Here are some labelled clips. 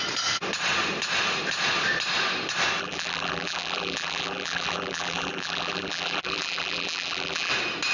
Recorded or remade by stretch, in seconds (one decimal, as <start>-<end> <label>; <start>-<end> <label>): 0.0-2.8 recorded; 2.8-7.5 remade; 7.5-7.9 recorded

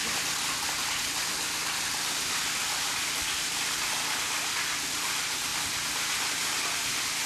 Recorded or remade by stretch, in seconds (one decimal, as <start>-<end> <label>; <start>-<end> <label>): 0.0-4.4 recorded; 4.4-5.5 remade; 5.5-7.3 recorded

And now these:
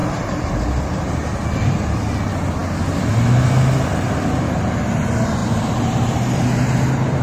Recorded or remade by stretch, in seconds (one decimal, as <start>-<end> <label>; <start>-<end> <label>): 0.0-0.5 remade; 0.5-5.4 recorded; 5.4-7.2 remade

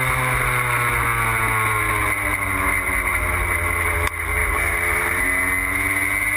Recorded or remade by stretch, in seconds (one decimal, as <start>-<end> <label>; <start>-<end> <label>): 0.0-4.4 recorded; 4.4-5.4 remade; 5.4-6.4 recorded

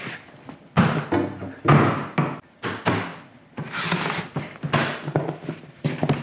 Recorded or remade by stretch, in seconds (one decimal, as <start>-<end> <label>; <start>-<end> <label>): 0.0-6.2 recorded

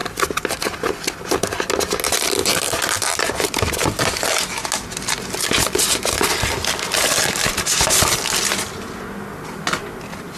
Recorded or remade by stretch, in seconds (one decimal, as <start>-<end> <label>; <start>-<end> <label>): 0.0-2.4 recorded; 2.4-3.3 remade; 3.3-10.4 recorded